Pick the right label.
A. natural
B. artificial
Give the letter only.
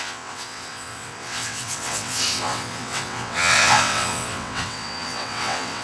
B